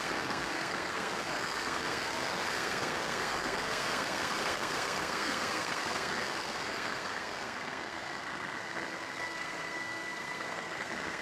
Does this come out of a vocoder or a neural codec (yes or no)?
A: yes